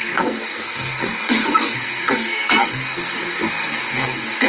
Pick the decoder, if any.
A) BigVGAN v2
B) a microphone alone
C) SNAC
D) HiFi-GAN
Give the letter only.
C